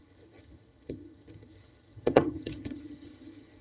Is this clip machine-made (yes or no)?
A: yes